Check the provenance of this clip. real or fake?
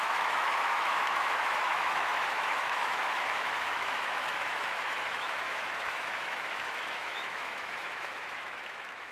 fake